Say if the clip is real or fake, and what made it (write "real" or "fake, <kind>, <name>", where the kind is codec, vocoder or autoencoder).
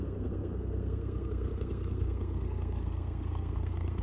fake, codec, SNAC